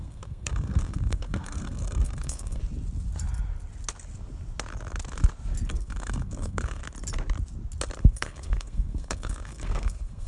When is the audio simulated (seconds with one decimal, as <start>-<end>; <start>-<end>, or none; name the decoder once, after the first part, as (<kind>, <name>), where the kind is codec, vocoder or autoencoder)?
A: 0.0-2.6 (codec, SNAC); 5.7-6.8; 8.0-10.3